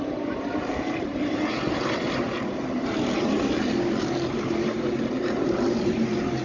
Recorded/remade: remade